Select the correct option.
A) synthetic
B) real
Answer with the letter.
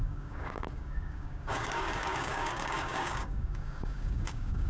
A